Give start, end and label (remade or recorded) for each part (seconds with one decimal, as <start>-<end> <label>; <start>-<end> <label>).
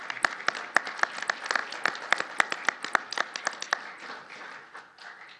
0.0-1.6 recorded; 1.6-4.8 remade; 4.8-5.4 recorded